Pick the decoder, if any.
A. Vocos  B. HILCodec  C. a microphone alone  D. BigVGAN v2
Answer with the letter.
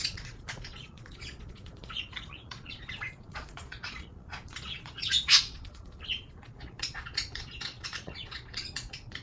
A